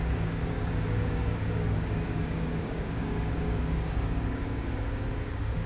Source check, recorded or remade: remade